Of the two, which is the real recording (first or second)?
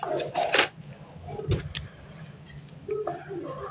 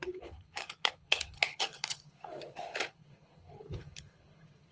first